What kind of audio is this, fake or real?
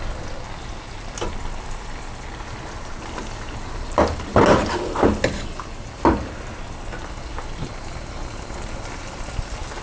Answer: real